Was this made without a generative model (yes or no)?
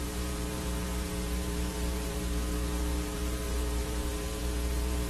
no